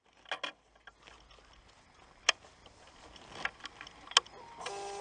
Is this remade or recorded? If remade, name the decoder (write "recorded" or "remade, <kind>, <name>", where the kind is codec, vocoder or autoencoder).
recorded